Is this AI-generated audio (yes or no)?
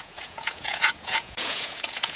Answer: yes